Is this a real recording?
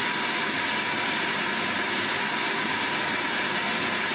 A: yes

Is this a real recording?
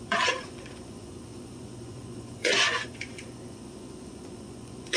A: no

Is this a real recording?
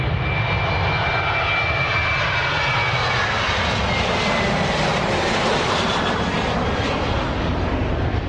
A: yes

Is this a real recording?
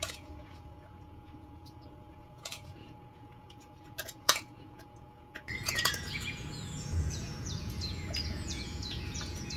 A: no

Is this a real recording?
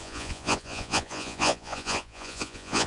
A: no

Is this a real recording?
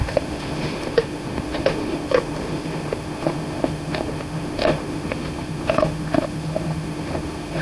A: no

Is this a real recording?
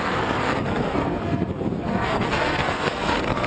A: no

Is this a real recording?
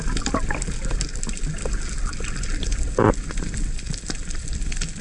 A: yes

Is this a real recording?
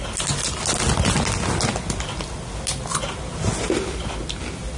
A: yes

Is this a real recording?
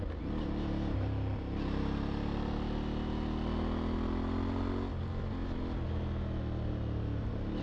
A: yes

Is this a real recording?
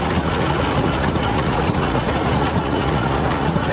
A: no